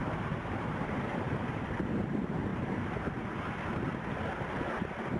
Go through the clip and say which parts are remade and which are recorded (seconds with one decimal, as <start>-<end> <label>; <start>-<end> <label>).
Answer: 0.0-2.1 remade; 2.1-2.5 recorded; 2.5-3.0 remade; 3.0-5.2 recorded